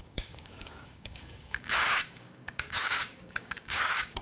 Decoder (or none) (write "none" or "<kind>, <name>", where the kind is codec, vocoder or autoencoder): codec, DAC